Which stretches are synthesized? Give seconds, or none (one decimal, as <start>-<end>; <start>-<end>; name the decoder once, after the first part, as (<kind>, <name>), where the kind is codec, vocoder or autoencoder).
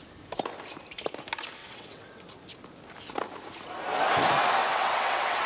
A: 1.6-2.2 (vocoder, WaveNeXt); 4.6-5.5